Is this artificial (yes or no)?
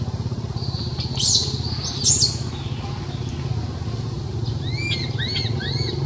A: no